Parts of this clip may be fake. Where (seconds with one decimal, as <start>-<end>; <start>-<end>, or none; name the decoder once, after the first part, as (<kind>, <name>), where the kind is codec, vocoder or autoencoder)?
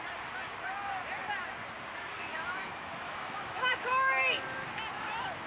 2.3-3.7 (autoencoder, DAC-VAE)